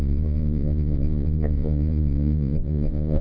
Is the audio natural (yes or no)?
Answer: no